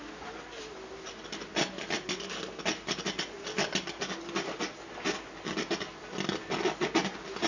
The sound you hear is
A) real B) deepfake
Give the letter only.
A